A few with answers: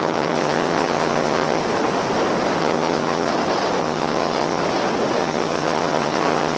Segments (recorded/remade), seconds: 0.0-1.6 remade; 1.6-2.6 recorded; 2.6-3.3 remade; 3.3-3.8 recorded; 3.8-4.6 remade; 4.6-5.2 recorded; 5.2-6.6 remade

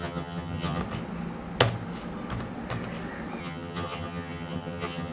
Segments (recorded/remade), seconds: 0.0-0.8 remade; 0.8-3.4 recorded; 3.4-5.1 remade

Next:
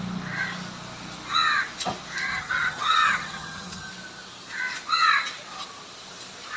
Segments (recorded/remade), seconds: 0.0-2.3 recorded; 2.3-3.9 remade; 3.9-6.6 recorded